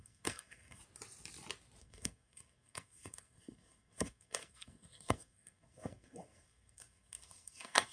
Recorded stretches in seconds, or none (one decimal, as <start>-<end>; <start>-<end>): 0.8-1.8